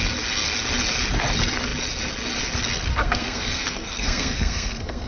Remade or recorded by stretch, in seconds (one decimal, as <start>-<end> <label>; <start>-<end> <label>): 0.0-2.9 recorded; 2.9-5.1 remade